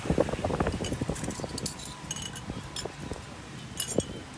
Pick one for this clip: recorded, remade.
recorded